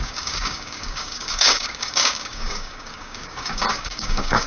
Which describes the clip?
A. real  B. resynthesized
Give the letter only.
B